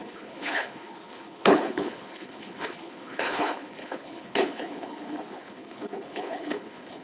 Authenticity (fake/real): fake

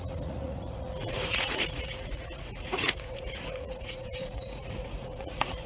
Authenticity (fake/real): fake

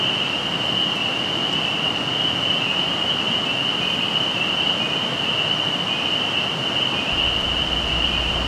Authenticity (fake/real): real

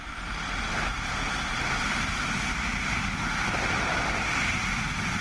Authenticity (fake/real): real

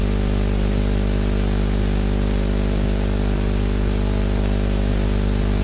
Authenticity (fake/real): real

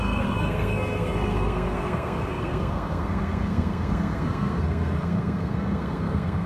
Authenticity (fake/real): fake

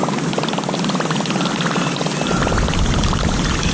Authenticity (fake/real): real